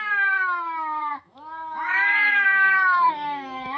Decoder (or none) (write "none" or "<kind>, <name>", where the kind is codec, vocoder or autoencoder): autoencoder, DAC-VAE